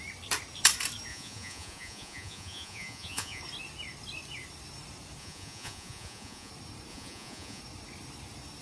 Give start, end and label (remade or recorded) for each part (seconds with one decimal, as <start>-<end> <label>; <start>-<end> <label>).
0.0-1.1 recorded; 1.1-3.4 remade; 3.4-5.2 recorded; 5.2-6.5 remade; 6.5-6.9 recorded; 6.9-7.6 remade; 7.6-8.6 recorded